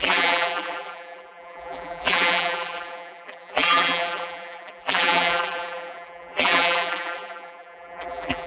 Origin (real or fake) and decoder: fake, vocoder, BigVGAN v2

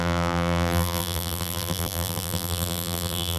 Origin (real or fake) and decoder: fake, vocoder, BigVGAN v2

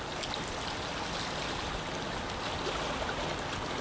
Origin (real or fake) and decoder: real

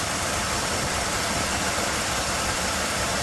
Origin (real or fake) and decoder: fake, vocoder, BigVGAN v2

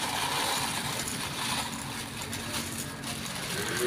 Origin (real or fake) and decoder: real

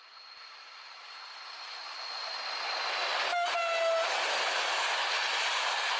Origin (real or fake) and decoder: real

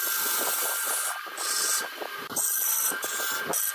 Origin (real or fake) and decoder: real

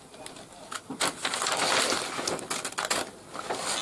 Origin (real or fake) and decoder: real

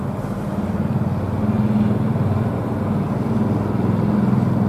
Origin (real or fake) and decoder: real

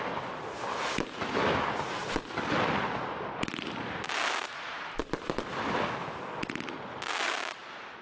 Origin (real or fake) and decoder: real